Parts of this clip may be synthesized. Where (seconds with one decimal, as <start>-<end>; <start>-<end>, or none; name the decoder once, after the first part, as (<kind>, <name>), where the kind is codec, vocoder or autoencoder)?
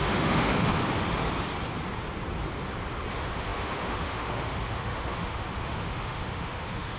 0.0-0.8 (autoencoder, DAC-VAE); 3.1-7.0